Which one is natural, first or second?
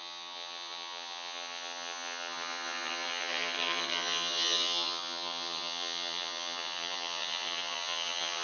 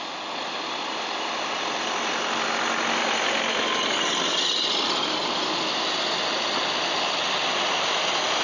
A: second